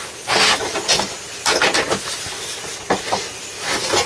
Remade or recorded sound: recorded